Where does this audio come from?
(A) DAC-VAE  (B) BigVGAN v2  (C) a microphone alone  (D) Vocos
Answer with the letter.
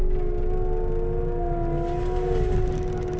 C